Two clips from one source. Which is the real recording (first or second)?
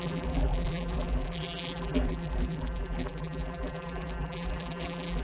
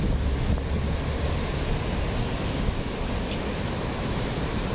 second